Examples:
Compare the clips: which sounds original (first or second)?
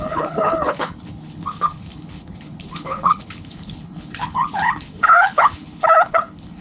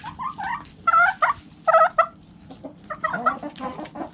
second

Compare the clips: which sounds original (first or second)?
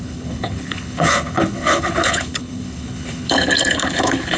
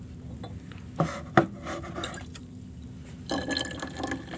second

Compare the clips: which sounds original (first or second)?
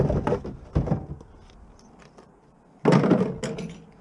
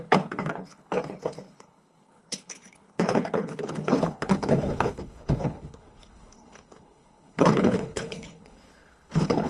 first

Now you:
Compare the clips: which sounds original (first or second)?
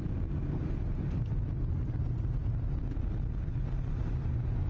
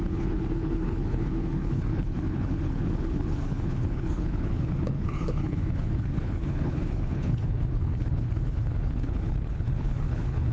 first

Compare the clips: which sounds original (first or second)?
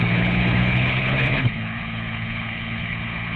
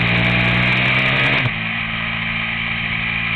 second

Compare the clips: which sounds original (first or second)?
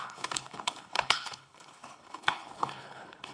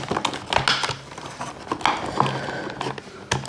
second